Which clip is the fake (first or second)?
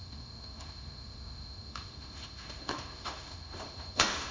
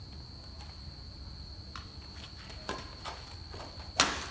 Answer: first